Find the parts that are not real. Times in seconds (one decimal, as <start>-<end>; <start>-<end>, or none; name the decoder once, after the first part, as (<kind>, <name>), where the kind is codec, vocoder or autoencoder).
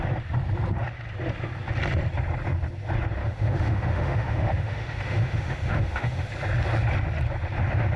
3.2-6.3 (autoencoder, DAC-VAE)